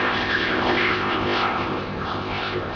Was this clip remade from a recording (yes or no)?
yes